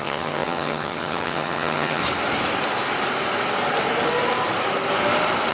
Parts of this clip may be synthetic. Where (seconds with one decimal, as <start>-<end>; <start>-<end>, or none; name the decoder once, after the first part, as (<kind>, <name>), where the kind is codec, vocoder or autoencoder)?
0.0-2.0 (vocoder, HiFi-GAN)